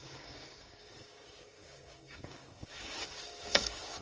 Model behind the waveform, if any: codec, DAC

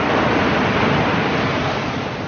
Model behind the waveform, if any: none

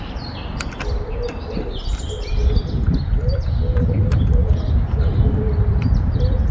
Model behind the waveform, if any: none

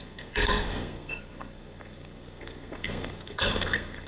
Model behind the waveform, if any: codec, SNAC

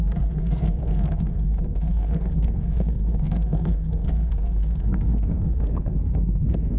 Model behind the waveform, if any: codec, SNAC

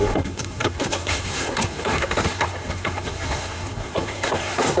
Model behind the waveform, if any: codec, SNAC